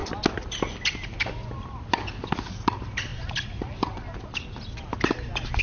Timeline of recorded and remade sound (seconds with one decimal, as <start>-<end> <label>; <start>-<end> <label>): 0.0-5.6 recorded